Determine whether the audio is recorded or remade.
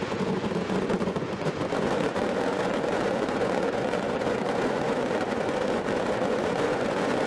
remade